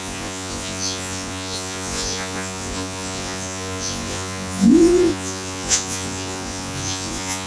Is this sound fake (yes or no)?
yes